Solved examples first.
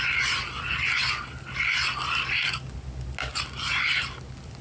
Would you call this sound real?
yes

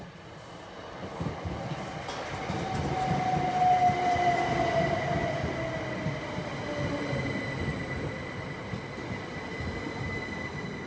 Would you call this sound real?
yes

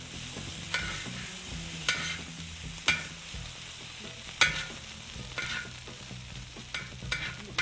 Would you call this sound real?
yes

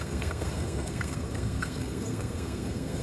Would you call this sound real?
no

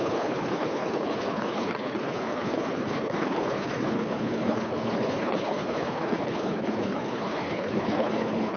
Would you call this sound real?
no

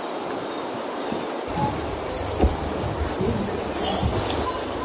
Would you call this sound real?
yes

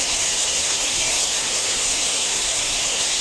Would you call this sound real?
no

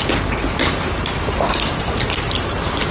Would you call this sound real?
yes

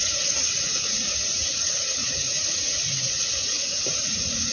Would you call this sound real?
no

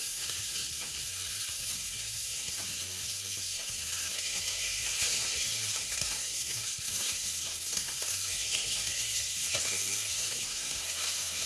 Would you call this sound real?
no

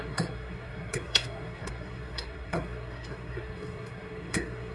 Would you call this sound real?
no